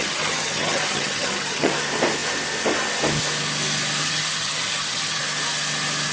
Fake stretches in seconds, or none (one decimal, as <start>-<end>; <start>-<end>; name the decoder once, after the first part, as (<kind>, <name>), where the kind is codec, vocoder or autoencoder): 0.0-1.7 (vocoder, HiFi-GAN); 4.0-5.2